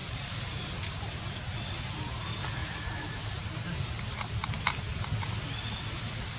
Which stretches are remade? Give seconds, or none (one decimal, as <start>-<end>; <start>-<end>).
0.0-1.2; 2.6-3.9